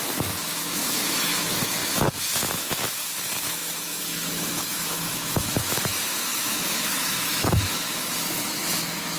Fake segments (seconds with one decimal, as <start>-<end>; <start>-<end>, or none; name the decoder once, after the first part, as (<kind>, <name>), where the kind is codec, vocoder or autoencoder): 0.0-9.2 (autoencoder, DAC-VAE)